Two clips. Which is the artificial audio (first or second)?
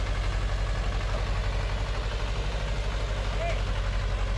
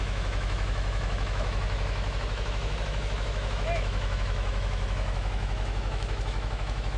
second